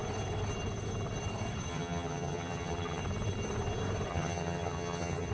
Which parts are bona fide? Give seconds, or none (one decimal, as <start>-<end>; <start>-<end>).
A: 0.0-1.7; 3.0-4.1